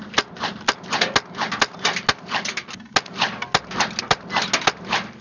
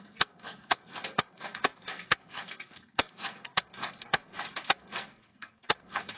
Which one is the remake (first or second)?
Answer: second